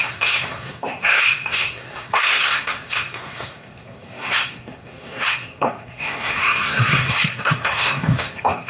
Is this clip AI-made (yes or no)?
yes